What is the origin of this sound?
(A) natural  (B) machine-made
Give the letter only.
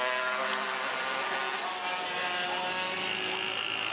A